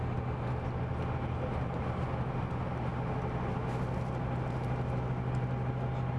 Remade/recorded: recorded